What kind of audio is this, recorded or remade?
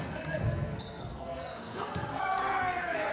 remade